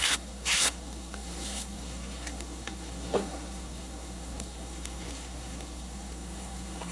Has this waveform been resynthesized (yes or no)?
yes